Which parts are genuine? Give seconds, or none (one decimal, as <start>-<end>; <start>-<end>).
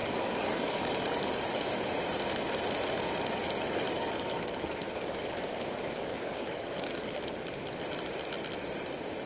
1.8-3.4; 7.2-9.3